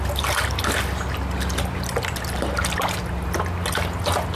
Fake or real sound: real